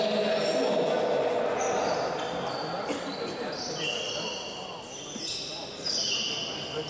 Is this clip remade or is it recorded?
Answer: recorded